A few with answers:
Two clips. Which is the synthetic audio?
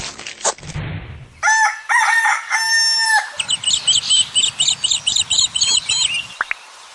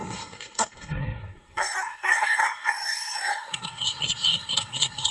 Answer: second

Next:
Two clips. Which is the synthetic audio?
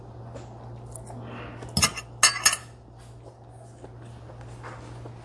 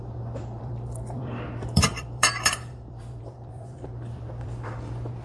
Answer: second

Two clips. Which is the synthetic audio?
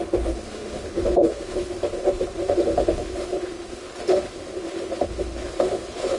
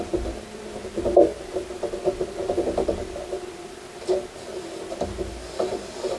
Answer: first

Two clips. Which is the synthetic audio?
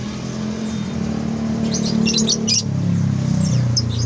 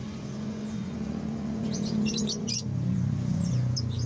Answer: second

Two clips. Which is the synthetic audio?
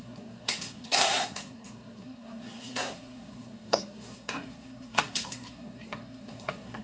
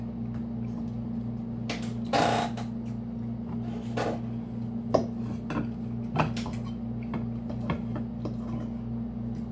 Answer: first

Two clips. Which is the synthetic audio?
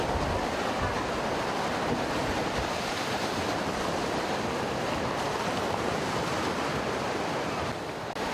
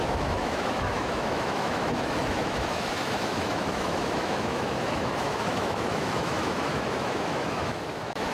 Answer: second